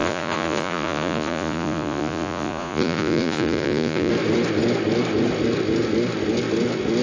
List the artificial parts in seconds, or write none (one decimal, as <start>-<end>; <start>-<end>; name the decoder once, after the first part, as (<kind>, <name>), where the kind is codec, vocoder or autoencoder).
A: 0.0-4.1 (vocoder, Vocos)